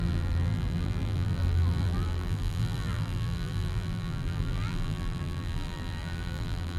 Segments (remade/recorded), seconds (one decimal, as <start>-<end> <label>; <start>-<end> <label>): 0.0-6.8 remade